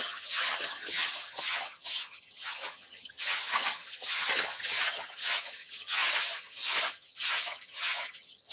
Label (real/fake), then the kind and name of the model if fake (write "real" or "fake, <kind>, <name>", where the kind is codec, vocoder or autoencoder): fake, vocoder, HiFi-GAN